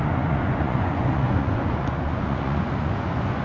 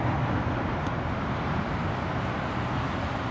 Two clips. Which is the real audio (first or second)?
second